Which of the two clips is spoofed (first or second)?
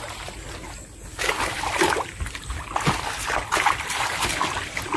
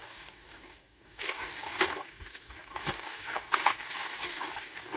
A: second